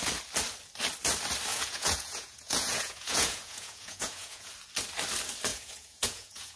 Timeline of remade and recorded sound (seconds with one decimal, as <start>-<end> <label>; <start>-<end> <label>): 0.0-1.5 recorded; 1.5-4.5 remade; 4.5-5.5 recorded; 5.5-6.6 remade